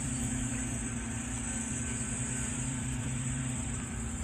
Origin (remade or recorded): remade